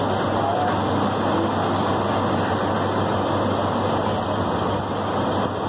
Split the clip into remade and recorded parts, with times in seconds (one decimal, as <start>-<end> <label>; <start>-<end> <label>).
0.0-5.7 recorded